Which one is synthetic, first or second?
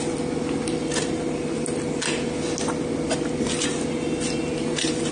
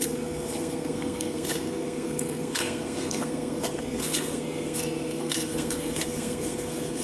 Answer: second